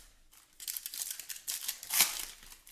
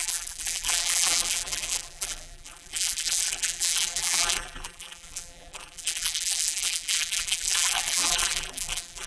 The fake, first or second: second